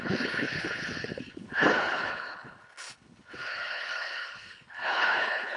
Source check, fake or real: fake